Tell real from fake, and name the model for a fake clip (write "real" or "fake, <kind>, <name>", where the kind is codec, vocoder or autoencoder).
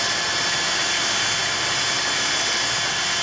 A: real